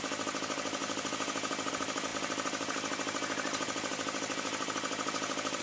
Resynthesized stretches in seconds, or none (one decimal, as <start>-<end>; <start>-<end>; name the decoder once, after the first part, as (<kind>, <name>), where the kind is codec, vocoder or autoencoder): none